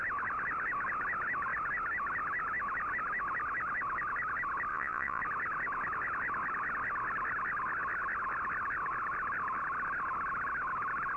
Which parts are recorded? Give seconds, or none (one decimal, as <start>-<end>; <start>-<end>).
0.0-4.7; 5.2-11.2

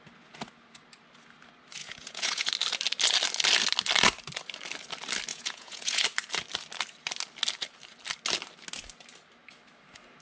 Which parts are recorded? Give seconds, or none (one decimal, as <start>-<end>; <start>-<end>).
0.0-1.8; 2.5-5.3; 6.0-10.2

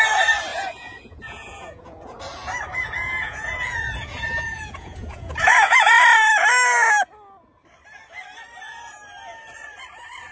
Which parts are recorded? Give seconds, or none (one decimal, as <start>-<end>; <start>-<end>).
0.0-0.5; 2.2-2.7; 5.9-10.3

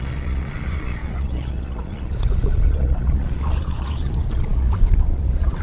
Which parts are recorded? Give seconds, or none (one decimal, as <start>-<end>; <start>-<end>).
none